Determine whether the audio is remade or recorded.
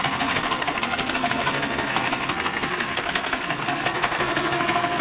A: remade